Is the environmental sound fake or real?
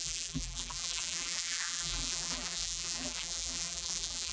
fake